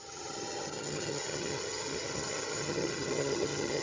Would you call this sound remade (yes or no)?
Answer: yes